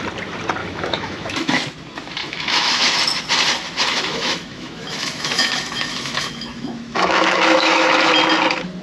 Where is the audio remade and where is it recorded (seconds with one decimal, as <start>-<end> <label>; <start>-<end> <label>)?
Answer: 0.0-0.6 recorded; 0.6-1.5 remade; 1.5-2.2 recorded; 2.2-2.8 remade; 2.8-3.9 recorded; 3.9-7.9 remade; 7.9-8.8 recorded